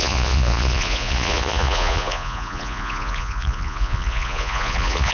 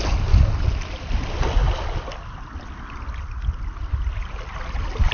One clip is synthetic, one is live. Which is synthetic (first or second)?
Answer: first